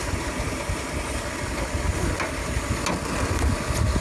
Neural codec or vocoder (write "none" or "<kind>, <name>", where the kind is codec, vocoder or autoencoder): none